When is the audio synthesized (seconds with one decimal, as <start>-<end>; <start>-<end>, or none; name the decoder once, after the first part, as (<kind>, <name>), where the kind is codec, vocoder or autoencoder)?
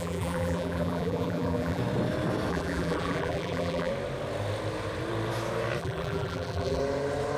0.0-1.8 (vocoder, BigVGAN v2); 2.5-3.9; 5.8-6.8